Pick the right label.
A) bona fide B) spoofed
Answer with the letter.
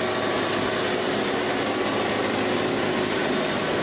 A